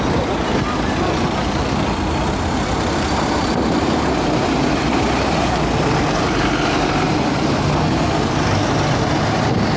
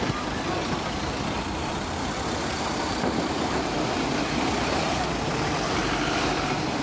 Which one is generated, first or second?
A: second